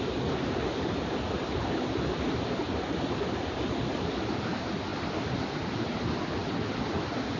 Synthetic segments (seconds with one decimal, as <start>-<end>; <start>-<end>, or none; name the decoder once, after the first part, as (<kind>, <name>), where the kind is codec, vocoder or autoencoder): none